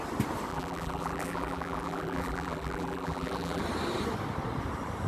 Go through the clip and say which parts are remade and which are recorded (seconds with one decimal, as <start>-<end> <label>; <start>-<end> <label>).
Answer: 0.0-0.5 recorded; 0.5-3.6 remade; 3.6-5.1 recorded